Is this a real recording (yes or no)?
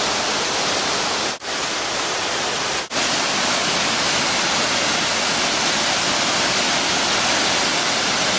yes